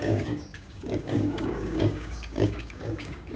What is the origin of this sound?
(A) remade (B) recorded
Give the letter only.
A